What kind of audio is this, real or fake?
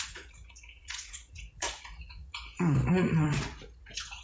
fake